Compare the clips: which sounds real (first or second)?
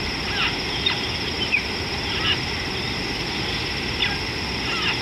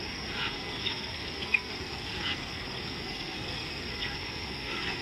first